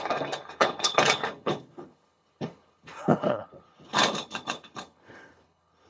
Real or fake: fake